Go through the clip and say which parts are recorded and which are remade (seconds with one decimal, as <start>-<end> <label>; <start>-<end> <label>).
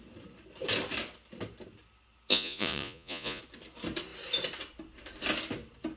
0.0-2.3 recorded; 2.3-3.4 remade; 3.4-6.0 recorded